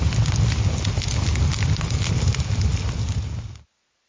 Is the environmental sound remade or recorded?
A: recorded